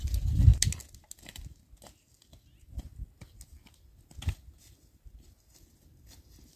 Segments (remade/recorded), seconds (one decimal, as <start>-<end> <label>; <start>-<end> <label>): 0.0-6.6 recorded